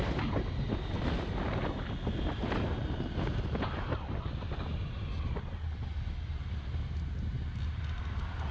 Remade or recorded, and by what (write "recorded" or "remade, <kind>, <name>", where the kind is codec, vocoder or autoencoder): recorded